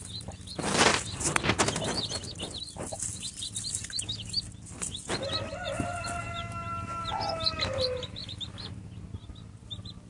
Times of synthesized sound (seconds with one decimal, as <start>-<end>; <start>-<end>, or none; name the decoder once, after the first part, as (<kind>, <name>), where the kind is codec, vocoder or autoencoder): 0.9-1.5 (vocoder, BigVGAN v2); 8.2-8.8